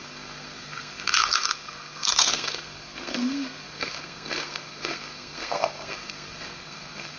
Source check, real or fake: fake